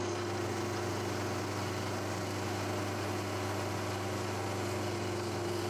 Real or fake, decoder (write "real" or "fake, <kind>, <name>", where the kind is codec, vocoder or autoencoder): real